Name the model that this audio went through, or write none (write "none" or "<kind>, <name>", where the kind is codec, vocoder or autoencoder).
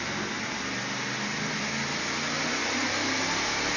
none